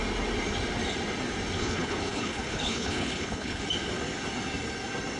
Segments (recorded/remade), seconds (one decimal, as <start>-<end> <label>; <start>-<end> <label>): 0.0-1.6 recorded; 1.6-3.6 remade; 3.6-5.2 recorded